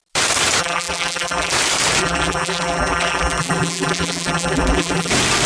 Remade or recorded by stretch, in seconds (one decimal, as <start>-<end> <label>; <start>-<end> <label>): 0.0-0.6 recorded; 0.6-1.5 remade; 1.5-2.0 recorded; 2.0-5.1 remade; 5.1-5.5 recorded